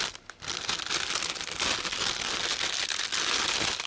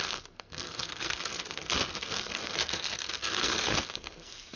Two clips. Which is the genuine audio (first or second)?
first